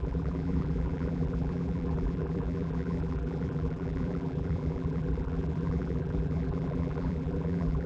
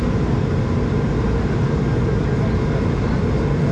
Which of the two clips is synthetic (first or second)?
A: first